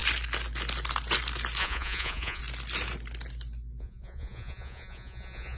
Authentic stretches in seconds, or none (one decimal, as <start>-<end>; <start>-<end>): 0.0-1.6; 2.4-3.8